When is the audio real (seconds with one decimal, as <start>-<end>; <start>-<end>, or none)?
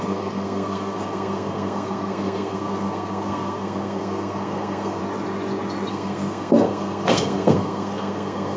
5.0-5.9